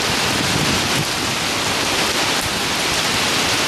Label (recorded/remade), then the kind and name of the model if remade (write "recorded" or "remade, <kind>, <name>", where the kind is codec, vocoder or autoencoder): recorded